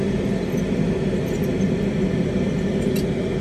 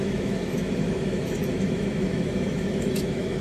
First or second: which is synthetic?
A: second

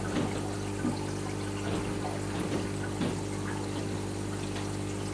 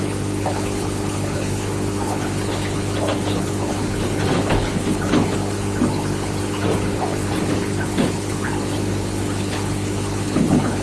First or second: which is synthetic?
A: second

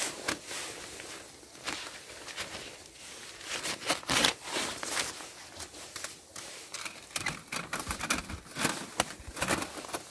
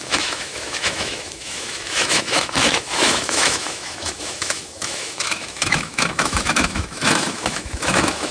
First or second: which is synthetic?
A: second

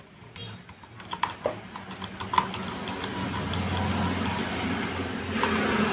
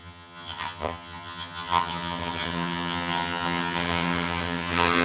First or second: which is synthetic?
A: second